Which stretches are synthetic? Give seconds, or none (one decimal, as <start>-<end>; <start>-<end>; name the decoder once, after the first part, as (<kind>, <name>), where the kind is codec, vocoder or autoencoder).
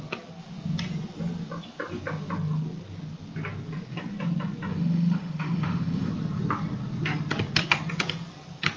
4.7-6.1 (autoencoder, DAC-VAE)